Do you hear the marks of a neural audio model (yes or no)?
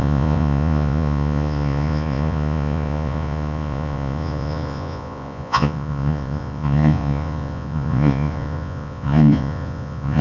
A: yes